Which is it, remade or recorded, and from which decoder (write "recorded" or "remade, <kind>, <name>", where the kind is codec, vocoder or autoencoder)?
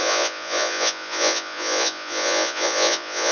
remade, vocoder, Vocos